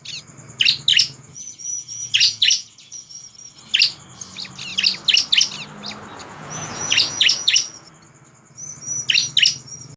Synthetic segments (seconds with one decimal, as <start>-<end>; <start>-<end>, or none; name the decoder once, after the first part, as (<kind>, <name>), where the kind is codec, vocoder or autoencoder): 0.9-3.3 (vocoder, Vocos); 6.2-7.9